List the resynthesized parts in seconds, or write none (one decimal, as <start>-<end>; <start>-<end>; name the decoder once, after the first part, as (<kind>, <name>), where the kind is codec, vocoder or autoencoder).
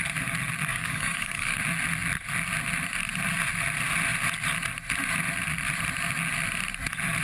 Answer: 0.7-1.6 (codec, DAC)